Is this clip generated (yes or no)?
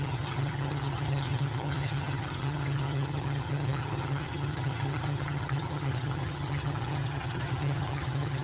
yes